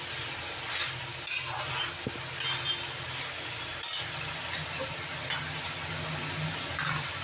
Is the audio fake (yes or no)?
no